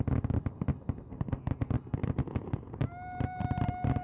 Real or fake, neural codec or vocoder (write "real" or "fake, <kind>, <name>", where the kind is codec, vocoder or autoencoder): real